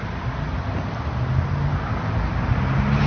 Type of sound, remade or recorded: recorded